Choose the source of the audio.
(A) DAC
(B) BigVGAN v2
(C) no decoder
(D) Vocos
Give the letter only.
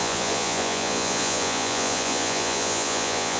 D